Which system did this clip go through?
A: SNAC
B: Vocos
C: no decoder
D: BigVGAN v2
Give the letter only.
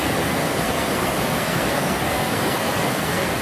A